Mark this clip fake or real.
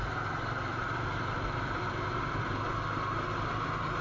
real